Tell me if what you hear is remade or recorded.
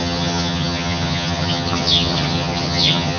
remade